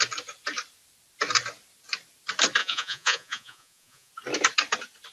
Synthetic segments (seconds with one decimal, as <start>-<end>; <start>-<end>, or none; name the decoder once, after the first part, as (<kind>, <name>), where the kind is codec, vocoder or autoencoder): 2.6-4.1 (vocoder, Vocos)